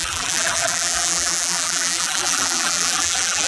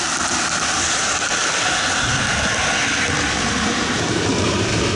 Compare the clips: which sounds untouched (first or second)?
second